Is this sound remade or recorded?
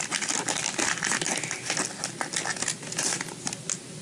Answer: recorded